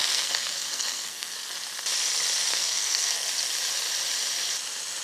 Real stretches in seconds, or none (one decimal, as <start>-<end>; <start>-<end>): 1.5-2.5; 3.3-5.0